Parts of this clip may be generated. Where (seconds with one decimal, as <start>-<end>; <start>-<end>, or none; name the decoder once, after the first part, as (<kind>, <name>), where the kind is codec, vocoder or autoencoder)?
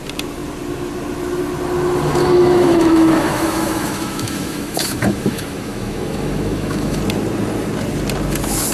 2.2-7.0 (autoencoder, DAC-VAE)